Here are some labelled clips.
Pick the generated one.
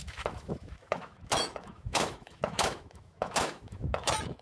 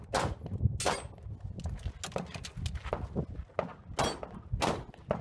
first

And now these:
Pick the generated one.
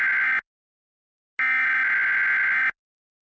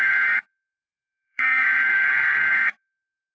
second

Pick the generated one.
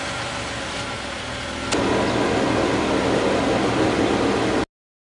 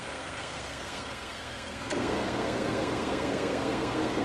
second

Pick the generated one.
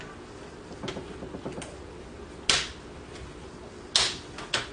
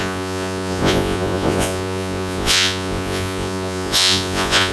second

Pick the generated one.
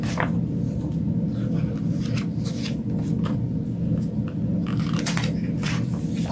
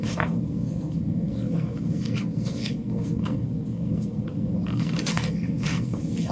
second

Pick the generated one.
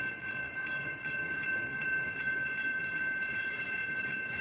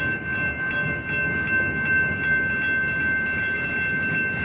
first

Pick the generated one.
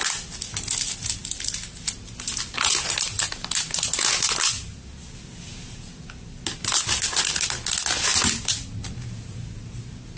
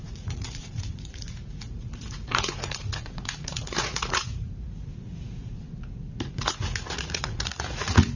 second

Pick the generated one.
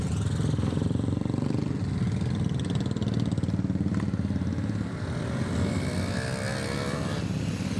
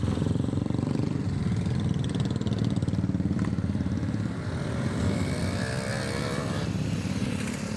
second